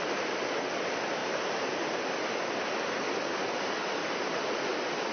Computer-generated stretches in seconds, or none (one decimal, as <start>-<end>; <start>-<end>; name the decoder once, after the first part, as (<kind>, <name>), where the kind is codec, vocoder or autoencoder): 1.2-2.0 (vocoder, BigVGAN v2)